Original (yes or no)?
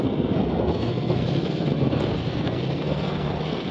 no